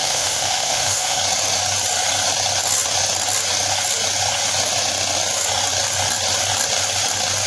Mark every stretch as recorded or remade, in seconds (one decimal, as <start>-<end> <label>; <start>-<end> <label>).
0.0-1.2 remade; 1.2-7.5 recorded